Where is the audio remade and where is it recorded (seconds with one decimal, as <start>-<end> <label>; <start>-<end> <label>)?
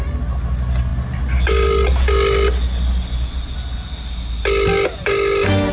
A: 0.0-5.7 recorded